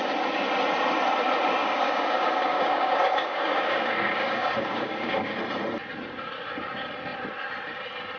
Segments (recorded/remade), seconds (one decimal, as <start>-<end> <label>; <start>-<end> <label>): 0.0-1.6 recorded; 1.6-5.4 remade; 5.4-8.2 recorded